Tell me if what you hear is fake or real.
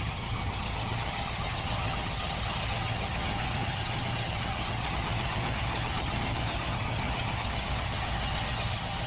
fake